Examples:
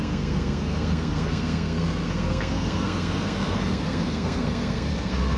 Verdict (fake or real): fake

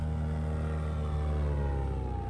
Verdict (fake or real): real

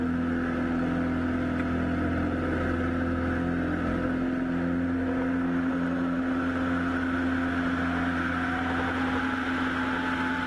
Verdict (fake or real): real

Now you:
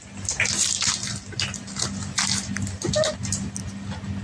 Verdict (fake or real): real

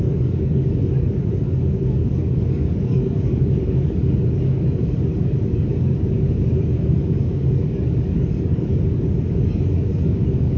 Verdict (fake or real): fake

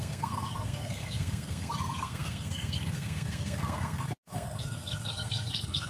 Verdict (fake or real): fake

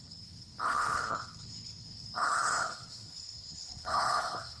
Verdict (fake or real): fake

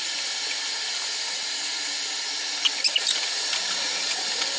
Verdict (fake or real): real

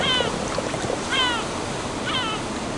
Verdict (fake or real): real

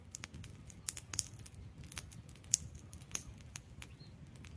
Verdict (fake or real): real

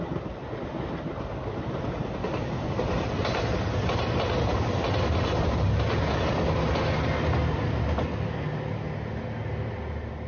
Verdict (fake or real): real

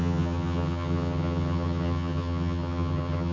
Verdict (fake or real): fake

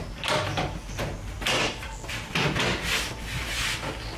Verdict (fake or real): real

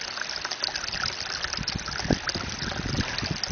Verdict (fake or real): real